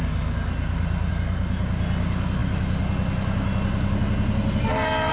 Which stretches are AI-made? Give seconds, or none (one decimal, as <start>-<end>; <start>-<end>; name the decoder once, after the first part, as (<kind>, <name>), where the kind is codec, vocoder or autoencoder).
none

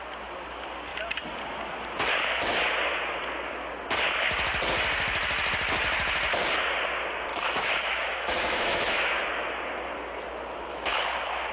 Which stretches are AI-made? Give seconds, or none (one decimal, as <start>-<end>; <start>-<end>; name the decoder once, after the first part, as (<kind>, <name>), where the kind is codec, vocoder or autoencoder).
7.3-9.2 (autoencoder, DAC-VAE); 10.7-11.5

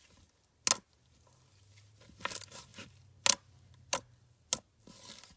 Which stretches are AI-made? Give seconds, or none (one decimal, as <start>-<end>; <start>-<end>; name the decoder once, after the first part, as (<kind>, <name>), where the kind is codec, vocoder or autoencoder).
none

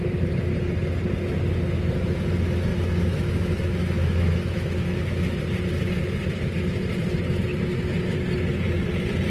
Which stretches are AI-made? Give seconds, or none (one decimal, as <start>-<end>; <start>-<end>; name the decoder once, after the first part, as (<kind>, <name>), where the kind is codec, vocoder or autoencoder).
2.7-5.4 (autoencoder, DAC-VAE)

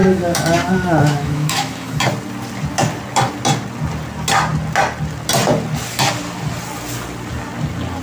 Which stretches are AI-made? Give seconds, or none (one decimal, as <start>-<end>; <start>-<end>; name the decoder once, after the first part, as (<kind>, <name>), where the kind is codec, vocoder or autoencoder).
0.0-2.0 (autoencoder, DAC-VAE)

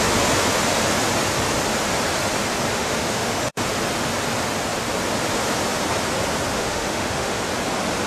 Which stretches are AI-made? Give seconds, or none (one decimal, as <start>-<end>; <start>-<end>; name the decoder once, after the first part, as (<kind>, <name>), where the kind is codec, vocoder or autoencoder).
2.7-3.6 (autoencoder, DAC-VAE); 6.5-7.4